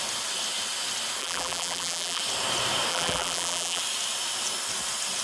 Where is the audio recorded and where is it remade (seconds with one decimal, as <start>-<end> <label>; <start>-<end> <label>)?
0.0-1.2 recorded; 1.2-2.2 remade; 2.2-2.9 recorded; 2.9-3.8 remade; 3.8-5.2 recorded